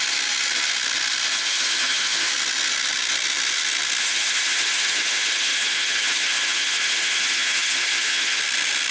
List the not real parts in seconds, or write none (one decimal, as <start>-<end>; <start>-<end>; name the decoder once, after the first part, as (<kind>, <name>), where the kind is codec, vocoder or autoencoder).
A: 1.3-2.3 (vocoder, HiFi-GAN); 4.0-8.4